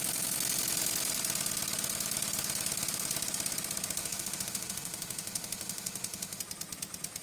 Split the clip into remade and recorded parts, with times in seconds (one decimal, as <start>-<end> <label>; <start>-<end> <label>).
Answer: 0.0-4.0 recorded; 4.0-6.4 remade; 6.4-7.2 recorded